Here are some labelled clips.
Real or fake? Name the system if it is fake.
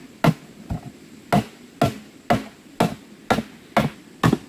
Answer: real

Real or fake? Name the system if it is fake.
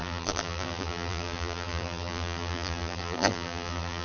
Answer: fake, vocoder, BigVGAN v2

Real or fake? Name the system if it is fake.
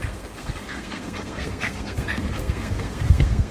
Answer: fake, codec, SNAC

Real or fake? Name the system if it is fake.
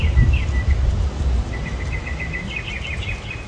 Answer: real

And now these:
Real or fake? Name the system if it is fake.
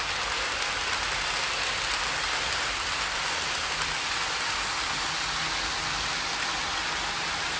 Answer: real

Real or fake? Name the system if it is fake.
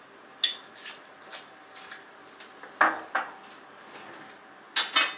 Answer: real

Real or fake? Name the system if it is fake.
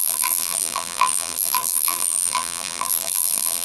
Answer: fake, vocoder, BigVGAN v2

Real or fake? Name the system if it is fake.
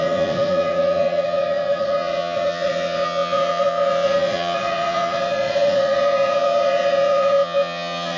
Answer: fake, vocoder, Vocos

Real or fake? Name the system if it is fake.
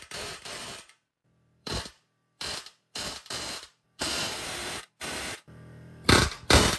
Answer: fake, vocoder, BigVGAN v2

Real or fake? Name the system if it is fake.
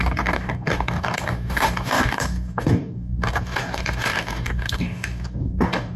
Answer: fake, codec, DAC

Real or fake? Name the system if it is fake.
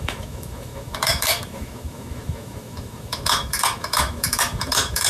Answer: fake, autoencoder, DAC-VAE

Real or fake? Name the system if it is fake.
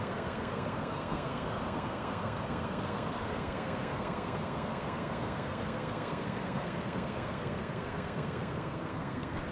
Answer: fake, codec, SNAC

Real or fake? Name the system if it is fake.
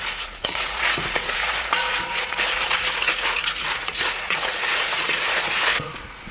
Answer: fake, vocoder, Vocos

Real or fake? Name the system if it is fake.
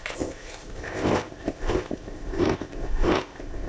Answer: fake, codec, ZipCodec